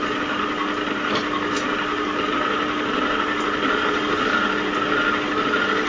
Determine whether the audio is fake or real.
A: real